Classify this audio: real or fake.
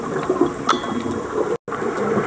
real